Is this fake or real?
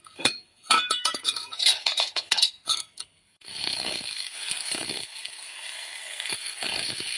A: fake